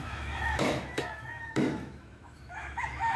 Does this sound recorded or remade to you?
remade